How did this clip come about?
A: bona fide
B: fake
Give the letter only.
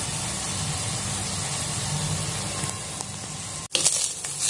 A